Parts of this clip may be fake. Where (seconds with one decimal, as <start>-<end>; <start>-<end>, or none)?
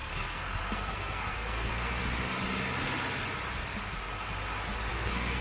0.0-2.0; 4.9-5.4